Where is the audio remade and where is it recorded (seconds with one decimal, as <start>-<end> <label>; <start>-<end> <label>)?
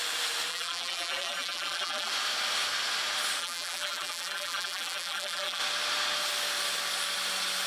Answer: 0.0-0.5 recorded; 0.5-2.1 remade; 2.1-3.4 recorded; 3.4-5.6 remade; 5.6-7.7 recorded